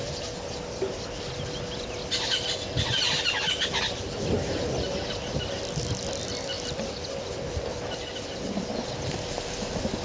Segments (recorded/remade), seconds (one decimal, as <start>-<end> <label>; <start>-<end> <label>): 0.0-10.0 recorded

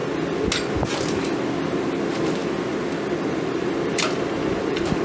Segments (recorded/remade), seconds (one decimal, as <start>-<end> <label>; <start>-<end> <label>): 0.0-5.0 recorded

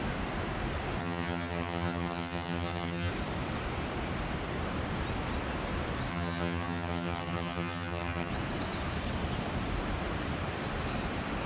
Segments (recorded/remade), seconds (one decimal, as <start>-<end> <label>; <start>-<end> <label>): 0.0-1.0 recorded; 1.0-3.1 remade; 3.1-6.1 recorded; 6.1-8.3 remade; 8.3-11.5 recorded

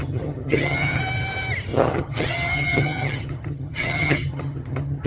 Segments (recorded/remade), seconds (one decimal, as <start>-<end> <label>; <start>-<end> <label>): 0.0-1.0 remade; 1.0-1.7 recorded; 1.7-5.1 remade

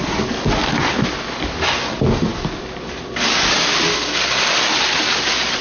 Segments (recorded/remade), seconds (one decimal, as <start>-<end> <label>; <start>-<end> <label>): 0.0-5.6 recorded

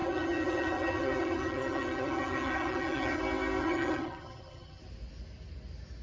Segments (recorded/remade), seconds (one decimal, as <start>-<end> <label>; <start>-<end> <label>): 0.0-3.2 remade; 3.2-3.6 recorded; 3.6-4.8 remade; 4.8-6.0 recorded

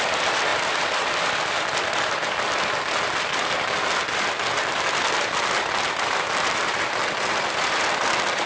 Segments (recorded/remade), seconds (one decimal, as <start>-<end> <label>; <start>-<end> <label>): 0.0-8.5 recorded

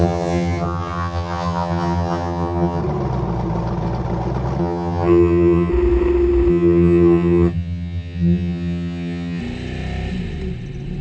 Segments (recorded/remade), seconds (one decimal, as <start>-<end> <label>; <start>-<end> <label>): 0.0-2.8 remade; 2.8-4.6 recorded; 4.6-5.7 remade; 5.7-6.5 recorded; 6.5-9.4 remade; 9.4-11.0 recorded